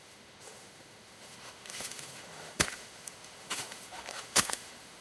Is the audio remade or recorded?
remade